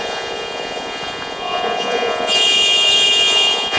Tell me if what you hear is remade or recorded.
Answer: remade